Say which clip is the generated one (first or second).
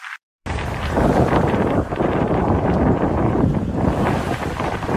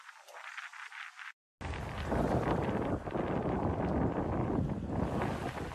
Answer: first